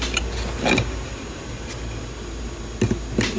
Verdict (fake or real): real